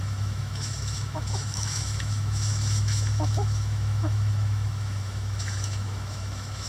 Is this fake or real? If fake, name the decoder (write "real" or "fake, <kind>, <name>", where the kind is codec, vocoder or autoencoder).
fake, autoencoder, DAC-VAE